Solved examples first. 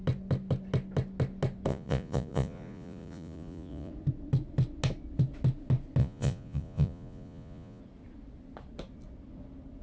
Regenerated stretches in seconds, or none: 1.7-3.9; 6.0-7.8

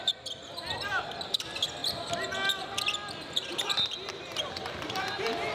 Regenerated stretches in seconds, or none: none